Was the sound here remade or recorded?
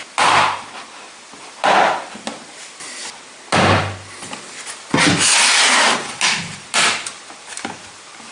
recorded